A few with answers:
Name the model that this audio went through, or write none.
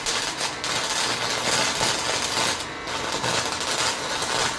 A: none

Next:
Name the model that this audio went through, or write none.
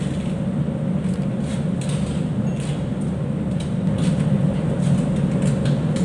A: none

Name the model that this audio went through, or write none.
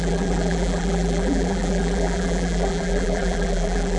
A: vocoder, BigVGAN v2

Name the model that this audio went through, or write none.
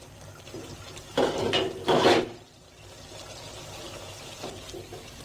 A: none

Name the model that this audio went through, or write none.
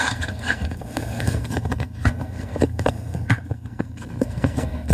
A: codec, SNAC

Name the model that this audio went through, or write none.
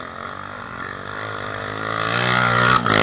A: none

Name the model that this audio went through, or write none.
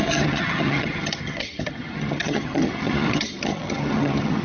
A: vocoder, HiFi-GAN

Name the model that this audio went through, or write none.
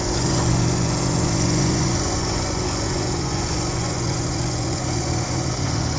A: vocoder, Vocos